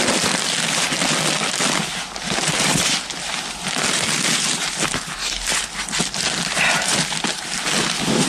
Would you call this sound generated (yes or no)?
no